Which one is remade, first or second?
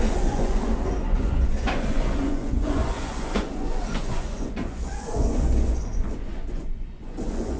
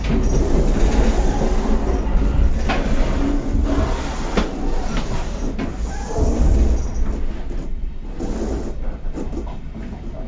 first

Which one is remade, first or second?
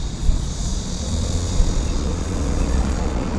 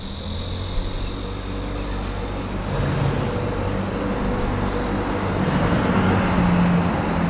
first